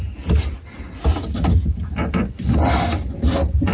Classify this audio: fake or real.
real